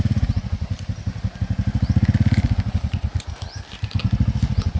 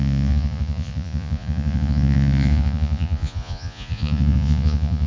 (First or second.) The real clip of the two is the first